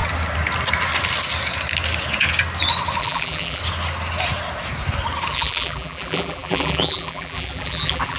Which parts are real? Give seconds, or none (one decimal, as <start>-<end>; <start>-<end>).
0.0-3.0; 3.6-5.3